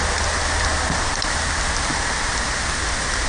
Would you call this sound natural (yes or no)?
yes